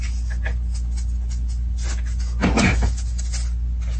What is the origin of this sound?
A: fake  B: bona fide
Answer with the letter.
B